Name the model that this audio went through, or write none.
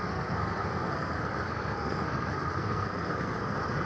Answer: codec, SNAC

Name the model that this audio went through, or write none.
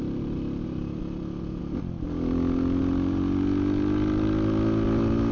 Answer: none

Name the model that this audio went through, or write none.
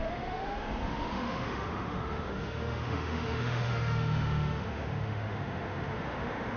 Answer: autoencoder, DAC-VAE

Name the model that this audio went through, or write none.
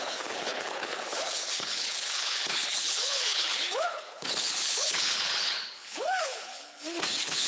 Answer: codec, HILCodec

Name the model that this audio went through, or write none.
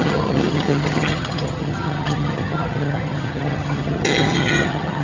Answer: vocoder, HiFi-GAN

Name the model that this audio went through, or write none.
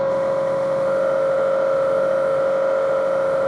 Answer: autoencoder, DAC-VAE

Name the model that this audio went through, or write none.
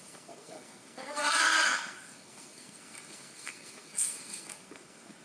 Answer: codec, SNAC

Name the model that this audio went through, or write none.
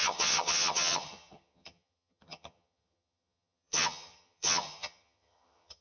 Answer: vocoder, HiFi-GAN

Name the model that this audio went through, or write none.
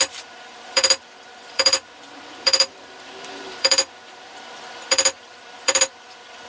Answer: vocoder, BigVGAN v2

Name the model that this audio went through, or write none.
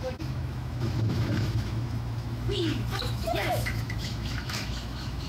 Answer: autoencoder, DAC-VAE